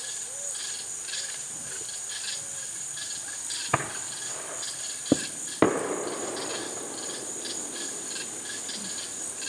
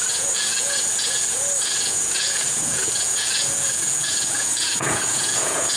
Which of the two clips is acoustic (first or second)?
first